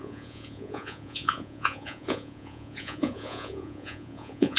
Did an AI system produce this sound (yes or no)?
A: yes